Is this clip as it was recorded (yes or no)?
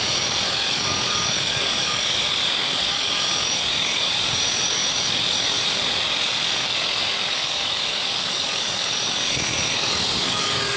no